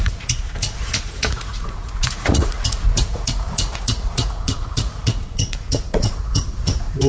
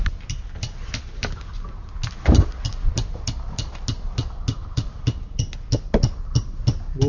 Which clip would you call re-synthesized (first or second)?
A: first